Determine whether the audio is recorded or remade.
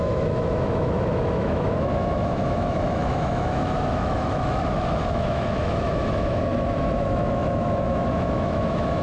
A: remade